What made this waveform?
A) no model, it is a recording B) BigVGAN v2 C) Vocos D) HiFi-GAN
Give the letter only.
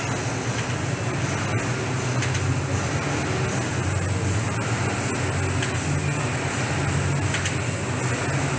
A